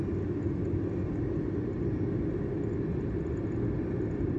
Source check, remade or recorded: recorded